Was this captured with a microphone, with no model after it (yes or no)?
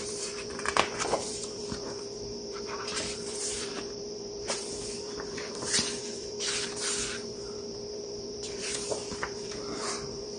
no